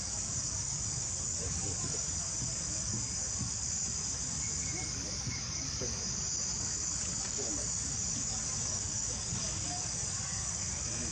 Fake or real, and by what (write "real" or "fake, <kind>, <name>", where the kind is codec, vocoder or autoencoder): fake, codec, DAC